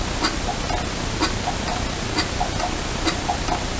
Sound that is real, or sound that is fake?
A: real